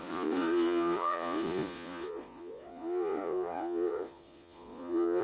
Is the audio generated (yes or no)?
yes